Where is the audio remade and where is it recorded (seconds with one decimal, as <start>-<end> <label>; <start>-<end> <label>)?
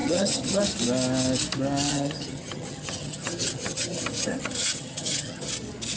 0.0-0.6 remade; 0.6-1.9 recorded; 1.9-5.5 remade; 5.5-6.0 recorded